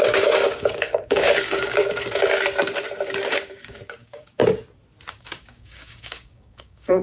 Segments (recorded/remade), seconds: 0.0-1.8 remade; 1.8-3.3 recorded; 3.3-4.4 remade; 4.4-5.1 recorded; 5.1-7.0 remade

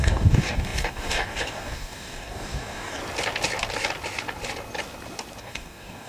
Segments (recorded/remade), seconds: 0.0-3.0 remade; 3.0-5.4 recorded; 5.4-6.1 remade

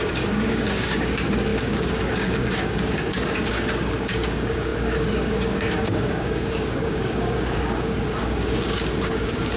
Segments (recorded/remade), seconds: 0.0-9.6 remade

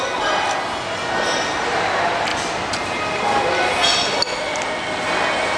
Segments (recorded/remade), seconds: 0.0-5.6 recorded

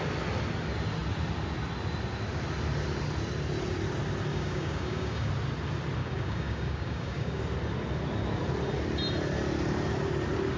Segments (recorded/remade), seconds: 0.0-4.3 recorded; 4.3-5.3 remade; 5.3-6.0 recorded; 6.0-7.4 remade; 7.4-10.6 recorded

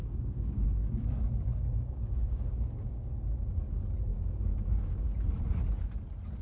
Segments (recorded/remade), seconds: 0.0-3.1 remade; 3.1-4.1 recorded; 4.1-5.1 remade; 5.1-6.4 recorded

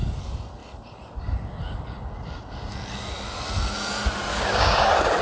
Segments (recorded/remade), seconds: 0.0-4.3 recorded; 4.3-4.8 remade; 4.8-5.2 recorded

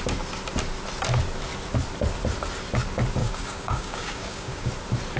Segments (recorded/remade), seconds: 0.0-3.2 recorded; 3.2-4.7 remade; 4.7-5.2 recorded